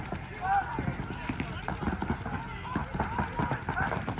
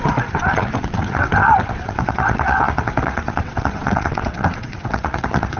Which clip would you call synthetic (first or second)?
second